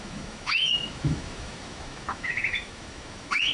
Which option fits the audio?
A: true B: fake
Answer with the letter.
B